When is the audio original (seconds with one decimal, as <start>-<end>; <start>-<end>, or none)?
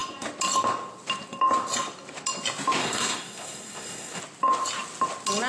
0.0-2.8; 4.2-5.5